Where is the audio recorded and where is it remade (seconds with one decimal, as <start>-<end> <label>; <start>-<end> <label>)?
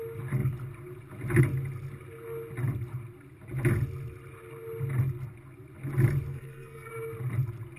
0.0-6.3 recorded; 6.3-6.9 remade; 6.9-7.8 recorded